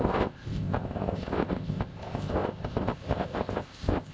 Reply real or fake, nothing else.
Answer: fake